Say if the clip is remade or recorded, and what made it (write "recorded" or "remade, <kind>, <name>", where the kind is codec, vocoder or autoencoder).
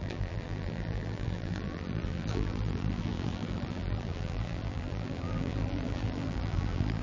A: remade, vocoder, BigVGAN v2